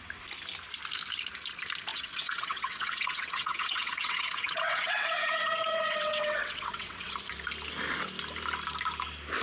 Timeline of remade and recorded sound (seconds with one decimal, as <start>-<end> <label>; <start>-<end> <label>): 0.0-1.9 recorded; 1.9-7.1 remade; 7.1-9.4 recorded